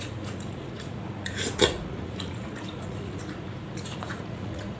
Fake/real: fake